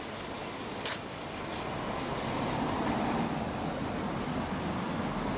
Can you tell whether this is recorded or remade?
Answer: recorded